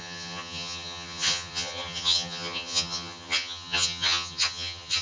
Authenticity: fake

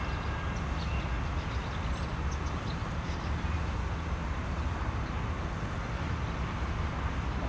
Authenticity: real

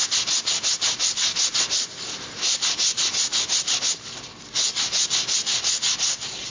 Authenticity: real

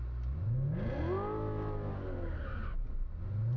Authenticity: real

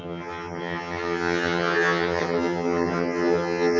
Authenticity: fake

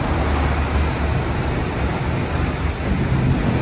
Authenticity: real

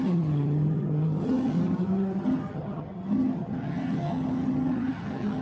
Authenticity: fake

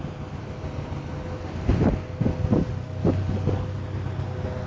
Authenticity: real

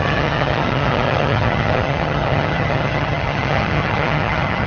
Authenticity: fake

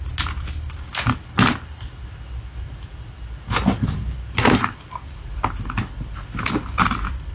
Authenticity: real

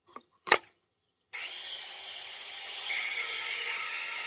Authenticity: fake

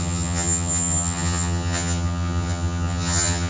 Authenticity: fake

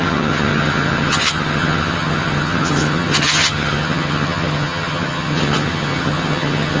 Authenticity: fake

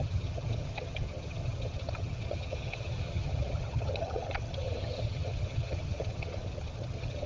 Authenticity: fake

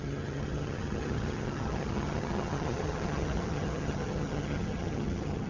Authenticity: fake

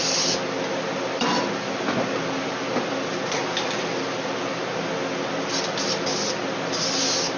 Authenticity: real